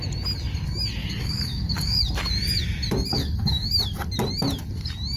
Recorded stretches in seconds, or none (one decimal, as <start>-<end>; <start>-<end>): 0.0-1.0; 2.0-3.1; 3.7-5.2

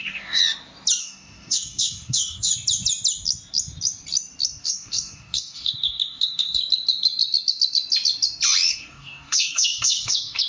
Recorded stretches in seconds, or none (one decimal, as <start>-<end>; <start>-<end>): 0.4-1.0; 2.5-4.6; 6.6-8.7

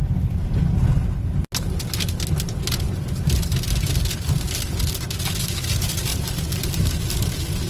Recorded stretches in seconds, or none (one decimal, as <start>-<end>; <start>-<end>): 0.0-6.1; 7.3-7.7

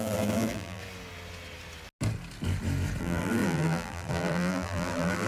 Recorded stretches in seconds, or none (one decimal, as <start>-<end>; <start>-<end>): 0.8-3.0

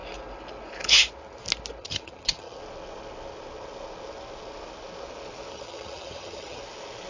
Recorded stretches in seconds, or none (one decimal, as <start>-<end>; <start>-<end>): 0.0-1.8; 2.6-5.5; 6.6-7.1

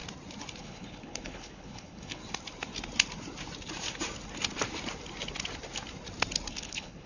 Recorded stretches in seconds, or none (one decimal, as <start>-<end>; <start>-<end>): 0.0-0.6; 2.2-6.5